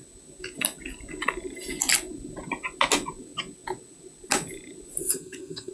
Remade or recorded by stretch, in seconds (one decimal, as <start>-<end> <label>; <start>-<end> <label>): 0.0-5.0 recorded; 5.0-5.7 remade

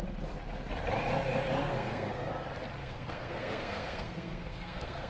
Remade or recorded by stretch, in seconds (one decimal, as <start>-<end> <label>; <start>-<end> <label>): 0.0-1.6 recorded; 1.6-2.3 remade; 2.3-2.8 recorded; 2.8-5.1 remade

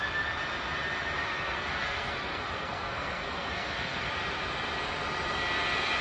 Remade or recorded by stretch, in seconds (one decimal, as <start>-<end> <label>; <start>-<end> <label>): 0.0-1.2 recorded; 1.2-4.1 remade; 4.1-6.0 recorded

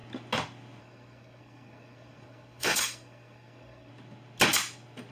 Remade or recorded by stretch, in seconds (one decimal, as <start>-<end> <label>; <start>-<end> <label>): 0.0-0.8 recorded; 0.8-3.9 remade; 3.9-5.1 recorded

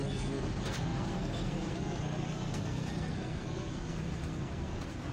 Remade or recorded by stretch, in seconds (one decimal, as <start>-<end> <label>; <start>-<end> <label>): 0.0-5.1 remade